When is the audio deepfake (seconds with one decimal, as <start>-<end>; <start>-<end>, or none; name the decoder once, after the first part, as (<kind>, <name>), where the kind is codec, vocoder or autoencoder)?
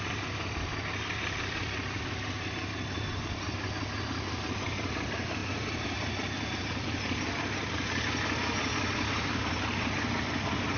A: none